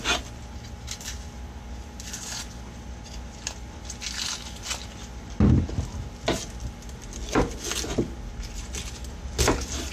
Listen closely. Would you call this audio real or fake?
real